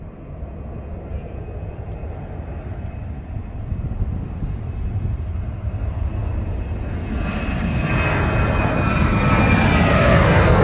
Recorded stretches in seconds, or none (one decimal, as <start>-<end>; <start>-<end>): 0.0-9.9